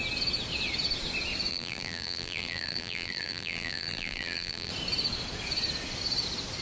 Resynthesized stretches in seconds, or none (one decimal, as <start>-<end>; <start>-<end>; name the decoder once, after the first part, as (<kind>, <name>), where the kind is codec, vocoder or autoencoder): 1.5-4.7 (vocoder, BigVGAN v2)